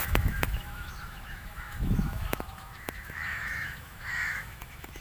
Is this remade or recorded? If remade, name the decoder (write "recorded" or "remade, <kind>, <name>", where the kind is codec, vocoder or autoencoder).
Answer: remade, autoencoder, DAC-VAE